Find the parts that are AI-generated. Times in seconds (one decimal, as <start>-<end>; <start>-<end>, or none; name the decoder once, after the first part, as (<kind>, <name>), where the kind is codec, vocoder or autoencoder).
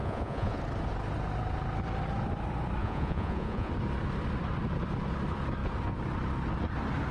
0.0-0.6 (vocoder, Vocos); 2.8-3.7